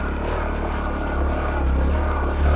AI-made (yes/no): no